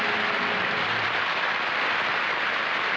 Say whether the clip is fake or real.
fake